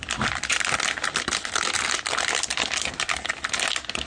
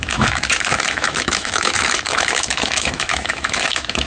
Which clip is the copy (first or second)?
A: second